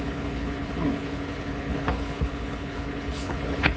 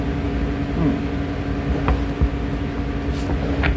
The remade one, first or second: first